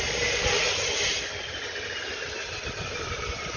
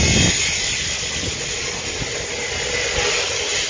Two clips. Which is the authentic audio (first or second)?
second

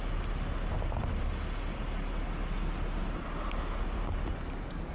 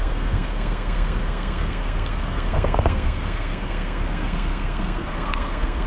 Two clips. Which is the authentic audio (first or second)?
first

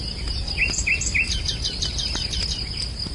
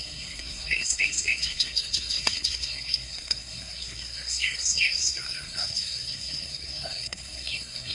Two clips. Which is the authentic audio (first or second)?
first